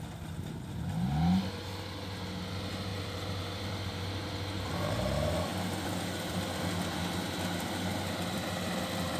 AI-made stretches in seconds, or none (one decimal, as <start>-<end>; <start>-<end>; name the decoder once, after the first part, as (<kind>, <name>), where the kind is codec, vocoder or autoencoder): 2.9-4.0 (vocoder, BigVGAN v2); 5.5-6.4